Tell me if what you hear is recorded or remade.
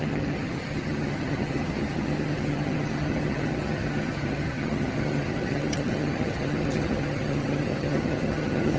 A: remade